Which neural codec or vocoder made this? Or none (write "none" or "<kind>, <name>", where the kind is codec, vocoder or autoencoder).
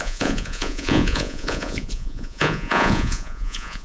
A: vocoder, Vocos